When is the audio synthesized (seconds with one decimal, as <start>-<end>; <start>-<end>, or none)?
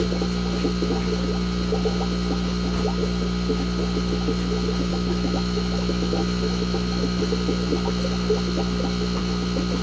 4.9-7.2